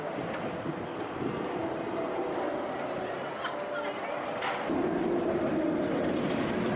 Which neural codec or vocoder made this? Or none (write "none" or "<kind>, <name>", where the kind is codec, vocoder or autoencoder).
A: none